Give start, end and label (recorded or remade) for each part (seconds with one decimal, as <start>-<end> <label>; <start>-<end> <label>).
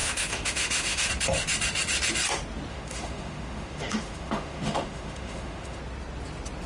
0.0-1.1 remade; 1.1-2.7 recorded; 2.7-5.8 remade; 5.8-6.7 recorded